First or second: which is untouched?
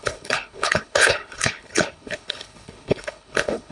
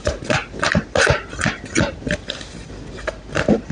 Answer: second